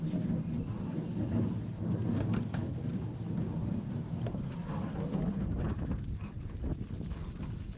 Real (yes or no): yes